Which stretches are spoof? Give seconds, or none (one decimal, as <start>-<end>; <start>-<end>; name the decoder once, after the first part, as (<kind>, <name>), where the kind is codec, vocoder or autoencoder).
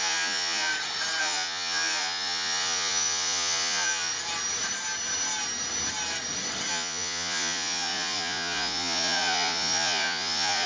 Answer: 0.0-0.7 (vocoder, Vocos); 1.2-4.1; 6.7-10.7